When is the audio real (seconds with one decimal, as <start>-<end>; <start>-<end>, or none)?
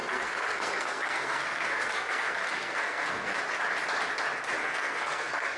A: 3.4-4.6